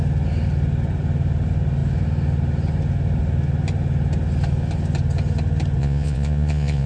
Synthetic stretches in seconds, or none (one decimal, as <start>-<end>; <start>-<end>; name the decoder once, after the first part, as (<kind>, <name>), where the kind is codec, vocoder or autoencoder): 5.8-6.9 (vocoder, Vocos)